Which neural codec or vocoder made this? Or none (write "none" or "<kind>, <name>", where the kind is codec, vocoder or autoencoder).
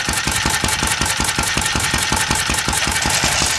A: none